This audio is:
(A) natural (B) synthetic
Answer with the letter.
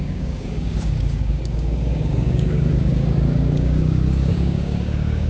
B